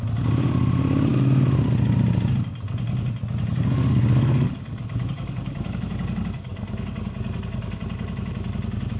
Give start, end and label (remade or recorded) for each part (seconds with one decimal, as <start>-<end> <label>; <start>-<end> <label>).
0.0-3.5 recorded; 3.5-7.8 remade; 7.8-9.0 recorded